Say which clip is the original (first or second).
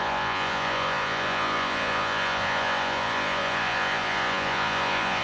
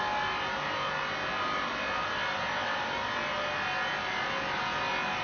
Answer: second